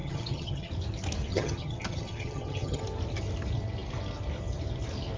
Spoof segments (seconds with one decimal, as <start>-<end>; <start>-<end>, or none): 0.0-0.7; 1.3-2.8